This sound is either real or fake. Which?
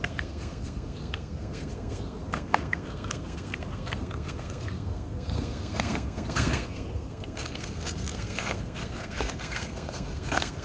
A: fake